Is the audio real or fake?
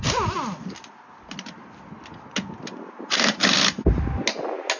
real